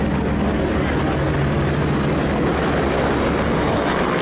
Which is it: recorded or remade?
recorded